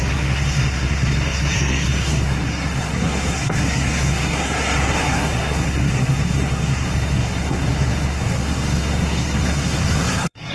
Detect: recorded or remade remade